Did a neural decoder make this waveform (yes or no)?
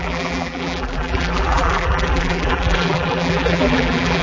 yes